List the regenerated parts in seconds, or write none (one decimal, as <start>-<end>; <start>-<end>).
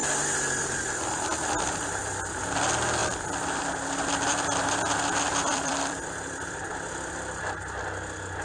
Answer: 3.0-3.6; 5.4-6.6